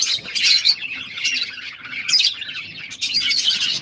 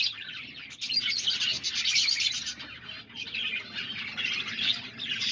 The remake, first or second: first